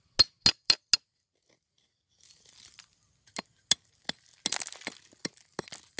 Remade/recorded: recorded